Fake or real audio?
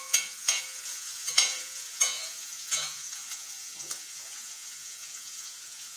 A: fake